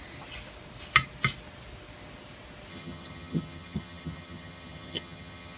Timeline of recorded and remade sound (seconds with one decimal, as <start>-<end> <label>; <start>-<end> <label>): 0.0-2.7 recorded; 2.7-5.6 remade